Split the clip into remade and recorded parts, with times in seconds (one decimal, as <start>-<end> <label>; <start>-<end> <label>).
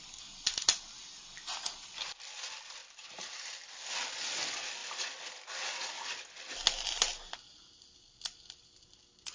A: 0.0-2.8 recorded; 2.8-3.9 remade; 3.9-9.3 recorded